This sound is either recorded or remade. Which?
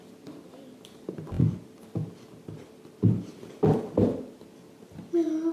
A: recorded